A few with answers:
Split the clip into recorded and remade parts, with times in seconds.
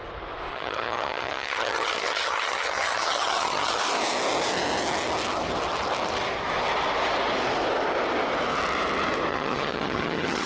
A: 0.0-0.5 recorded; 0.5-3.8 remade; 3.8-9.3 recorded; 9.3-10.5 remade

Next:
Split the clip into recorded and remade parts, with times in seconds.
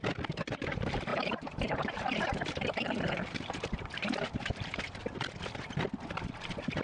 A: 0.0-1.1 recorded; 1.1-4.8 remade; 4.8-6.8 recorded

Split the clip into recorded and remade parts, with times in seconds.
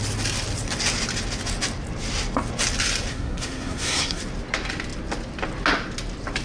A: 0.0-3.1 recorded; 3.1-4.2 remade; 4.2-6.4 recorded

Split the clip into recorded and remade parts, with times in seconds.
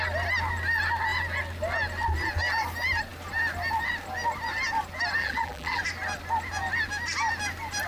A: 0.0-5.2 recorded; 5.2-5.8 remade; 5.8-7.9 recorded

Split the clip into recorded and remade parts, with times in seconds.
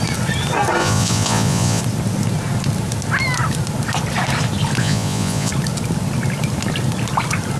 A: 0.0-0.8 recorded; 0.8-1.8 remade; 1.8-4.8 recorded; 4.8-5.5 remade; 5.5-7.6 recorded